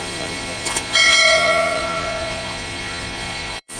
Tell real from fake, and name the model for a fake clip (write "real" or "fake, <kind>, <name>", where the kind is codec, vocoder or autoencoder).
fake, vocoder, Vocos